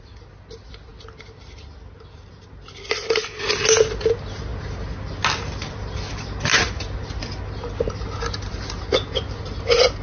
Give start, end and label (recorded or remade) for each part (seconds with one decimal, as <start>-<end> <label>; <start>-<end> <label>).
0.0-10.0 recorded